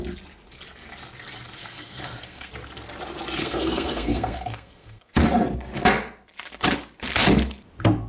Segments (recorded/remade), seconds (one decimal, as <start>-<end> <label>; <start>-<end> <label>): 0.0-1.6 recorded; 1.6-2.5 remade; 2.5-3.4 recorded; 3.4-5.1 remade; 5.1-8.1 recorded